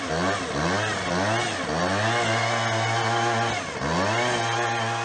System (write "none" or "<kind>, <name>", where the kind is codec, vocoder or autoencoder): none